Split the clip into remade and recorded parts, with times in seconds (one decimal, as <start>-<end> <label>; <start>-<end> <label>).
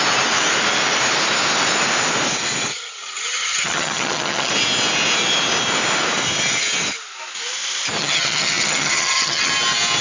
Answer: 0.0-2.7 recorded; 2.7-4.5 remade; 4.5-8.0 recorded; 8.0-9.5 remade; 9.5-10.0 recorded